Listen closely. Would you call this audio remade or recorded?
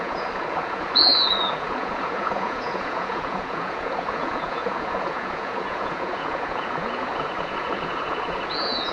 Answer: remade